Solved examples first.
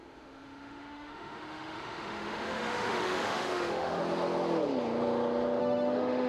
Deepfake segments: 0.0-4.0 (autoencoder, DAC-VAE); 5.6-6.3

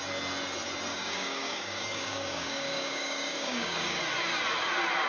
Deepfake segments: 0.9-4.0 (codec, DAC)

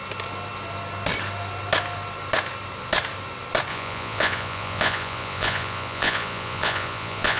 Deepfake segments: 3.7-7.4 (vocoder, Vocos)

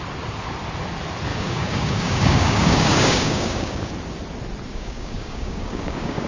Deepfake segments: 1.3-3.9 (codec, DAC); 4.7-6.3